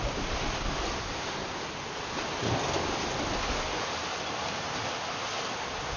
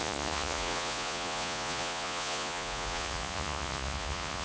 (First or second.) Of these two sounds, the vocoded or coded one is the second